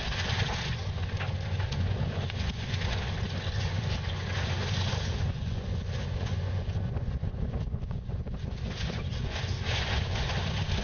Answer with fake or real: fake